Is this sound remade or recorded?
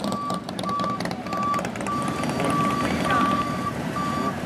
remade